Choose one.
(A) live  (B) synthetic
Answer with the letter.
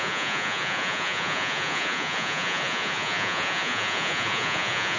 B